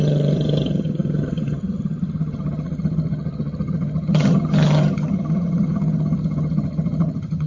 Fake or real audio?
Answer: fake